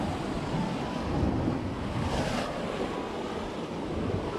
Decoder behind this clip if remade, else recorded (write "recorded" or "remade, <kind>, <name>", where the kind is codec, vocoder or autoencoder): recorded